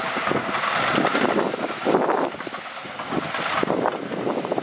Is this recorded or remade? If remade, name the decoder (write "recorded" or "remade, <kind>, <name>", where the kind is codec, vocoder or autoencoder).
recorded